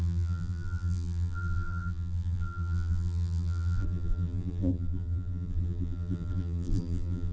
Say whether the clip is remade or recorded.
remade